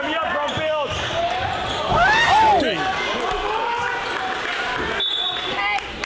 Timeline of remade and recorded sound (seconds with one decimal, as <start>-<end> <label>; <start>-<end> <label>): 0.0-6.1 recorded